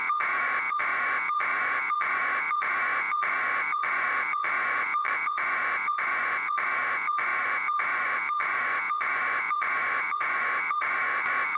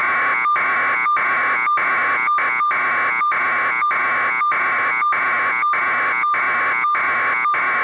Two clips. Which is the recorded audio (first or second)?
second